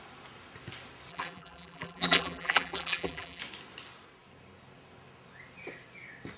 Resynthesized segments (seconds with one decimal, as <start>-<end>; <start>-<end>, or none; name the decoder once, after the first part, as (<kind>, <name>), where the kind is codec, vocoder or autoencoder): 1.1-3.4 (vocoder, BigVGAN v2)